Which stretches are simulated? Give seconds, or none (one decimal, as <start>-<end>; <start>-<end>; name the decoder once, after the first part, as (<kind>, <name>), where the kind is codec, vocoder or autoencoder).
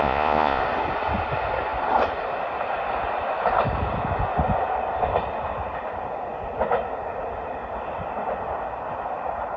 0.0-0.6 (vocoder, Vocos)